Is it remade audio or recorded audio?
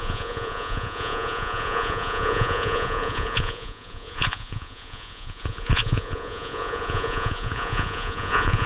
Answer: remade